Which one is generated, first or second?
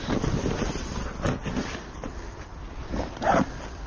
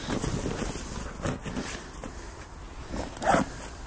first